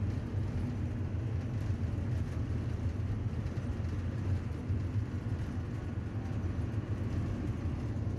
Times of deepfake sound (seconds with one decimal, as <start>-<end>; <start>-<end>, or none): none